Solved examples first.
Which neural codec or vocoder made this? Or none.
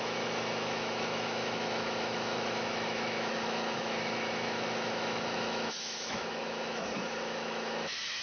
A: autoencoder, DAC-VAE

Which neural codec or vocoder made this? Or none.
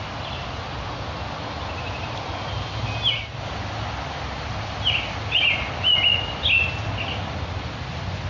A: none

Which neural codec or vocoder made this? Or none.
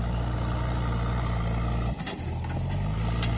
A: none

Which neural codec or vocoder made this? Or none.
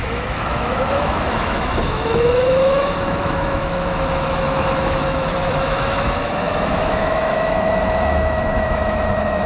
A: autoencoder, DAC-VAE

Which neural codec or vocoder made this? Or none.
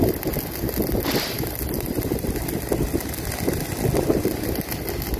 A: none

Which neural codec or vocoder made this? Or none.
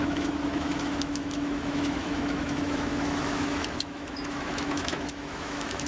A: autoencoder, DAC-VAE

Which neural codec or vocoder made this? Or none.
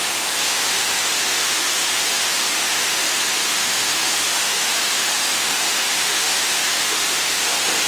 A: autoencoder, DAC-VAE